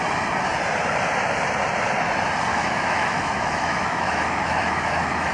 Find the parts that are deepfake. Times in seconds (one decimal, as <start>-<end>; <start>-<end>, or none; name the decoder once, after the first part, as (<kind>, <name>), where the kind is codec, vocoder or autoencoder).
2.5-5.3 (autoencoder, DAC-VAE)